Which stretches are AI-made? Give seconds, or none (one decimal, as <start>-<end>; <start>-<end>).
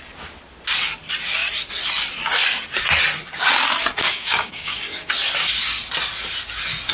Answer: 3.9-5.1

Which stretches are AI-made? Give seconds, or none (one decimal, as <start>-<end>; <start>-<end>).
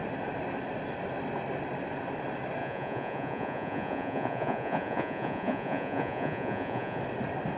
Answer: 2.6-7.0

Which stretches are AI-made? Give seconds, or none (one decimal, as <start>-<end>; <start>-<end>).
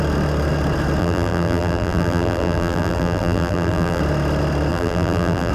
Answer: 1.0-4.0; 4.7-5.5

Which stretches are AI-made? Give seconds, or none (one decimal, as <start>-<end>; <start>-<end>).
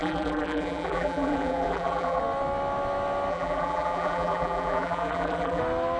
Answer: 0.0-2.2; 3.3-5.6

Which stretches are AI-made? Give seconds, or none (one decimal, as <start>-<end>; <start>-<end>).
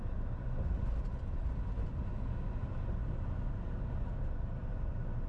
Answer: none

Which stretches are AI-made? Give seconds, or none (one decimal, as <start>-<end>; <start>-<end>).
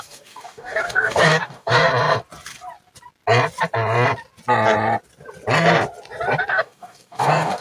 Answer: 0.0-1.9; 6.5-7.6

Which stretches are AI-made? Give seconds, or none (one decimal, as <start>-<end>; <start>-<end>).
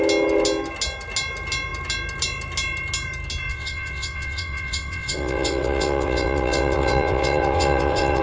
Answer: 3.5-8.2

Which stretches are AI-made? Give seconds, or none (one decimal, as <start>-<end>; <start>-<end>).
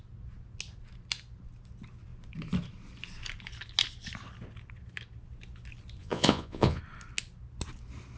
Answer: 6.0-6.8